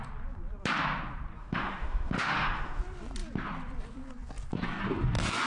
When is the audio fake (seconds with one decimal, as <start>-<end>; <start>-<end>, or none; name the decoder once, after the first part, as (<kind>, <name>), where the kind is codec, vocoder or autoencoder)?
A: 1.4-2.8 (autoencoder, DAC-VAE)